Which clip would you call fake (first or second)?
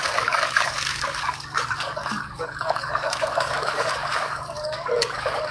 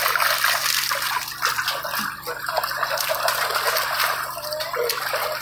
first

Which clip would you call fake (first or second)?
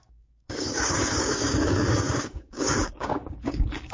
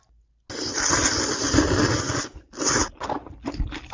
first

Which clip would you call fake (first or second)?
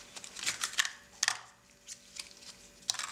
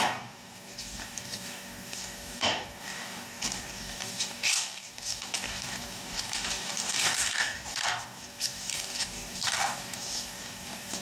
second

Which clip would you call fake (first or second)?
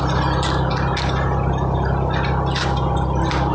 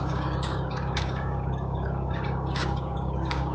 second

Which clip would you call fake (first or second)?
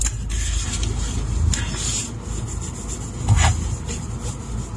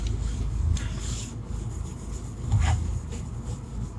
second